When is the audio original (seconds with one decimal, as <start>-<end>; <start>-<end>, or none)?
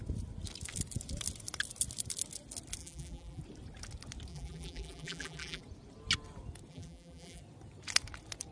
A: 0.0-2.8; 3.4-4.3; 5.6-6.7; 7.4-8.5